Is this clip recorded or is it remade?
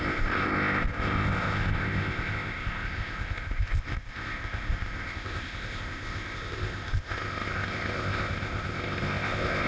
remade